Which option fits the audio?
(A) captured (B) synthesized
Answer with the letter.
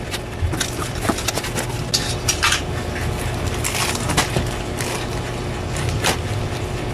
A